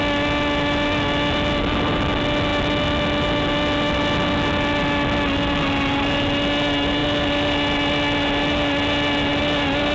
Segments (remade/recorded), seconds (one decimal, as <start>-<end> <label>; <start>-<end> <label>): 0.0-9.9 recorded